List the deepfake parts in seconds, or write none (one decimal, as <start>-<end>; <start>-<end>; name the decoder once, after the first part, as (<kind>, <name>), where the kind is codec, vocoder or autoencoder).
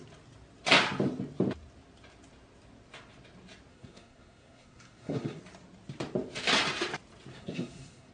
3.7-5.4 (codec, SNAC); 7.3-8.1